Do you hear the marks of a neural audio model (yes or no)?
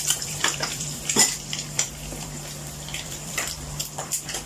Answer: yes